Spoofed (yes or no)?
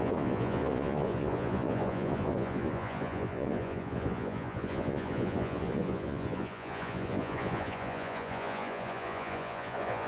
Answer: yes